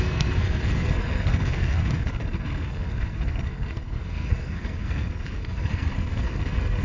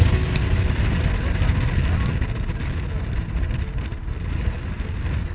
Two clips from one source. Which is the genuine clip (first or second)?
second